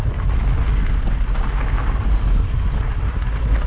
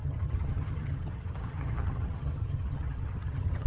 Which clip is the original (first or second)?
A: first